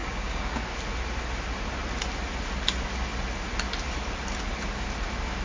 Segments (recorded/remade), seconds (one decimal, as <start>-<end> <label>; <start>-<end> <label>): 0.0-0.7 remade; 0.7-5.4 recorded